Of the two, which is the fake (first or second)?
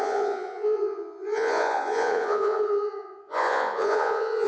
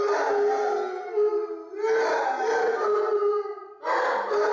first